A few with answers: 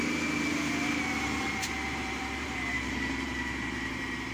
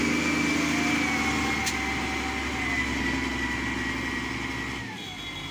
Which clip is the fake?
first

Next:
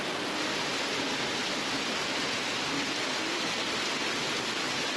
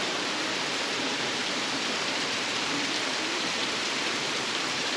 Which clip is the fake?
second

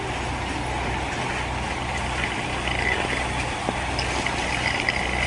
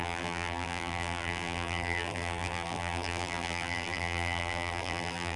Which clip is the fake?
second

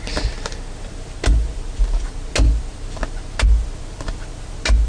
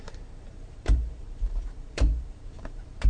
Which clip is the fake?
second